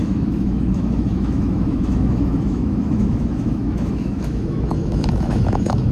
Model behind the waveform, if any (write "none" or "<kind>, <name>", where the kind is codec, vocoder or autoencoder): autoencoder, DAC-VAE